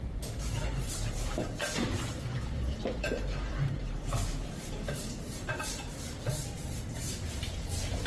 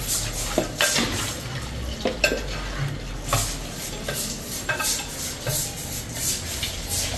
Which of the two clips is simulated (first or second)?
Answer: first